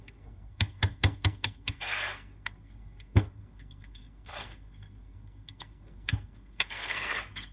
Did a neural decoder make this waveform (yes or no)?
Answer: yes